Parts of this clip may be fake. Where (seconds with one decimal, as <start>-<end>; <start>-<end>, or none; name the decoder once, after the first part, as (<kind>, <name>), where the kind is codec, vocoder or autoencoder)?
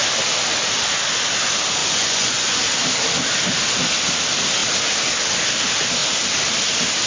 1.8-2.6 (vocoder, Vocos)